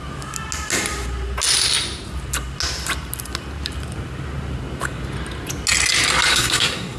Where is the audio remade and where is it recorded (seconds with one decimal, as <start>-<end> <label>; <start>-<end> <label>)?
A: 0.0-6.3 recorded; 6.3-7.0 remade

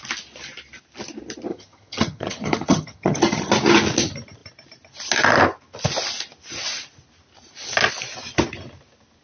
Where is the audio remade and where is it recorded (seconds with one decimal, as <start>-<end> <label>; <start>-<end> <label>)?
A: 0.0-1.5 recorded; 1.5-3.5 remade; 3.5-9.2 recorded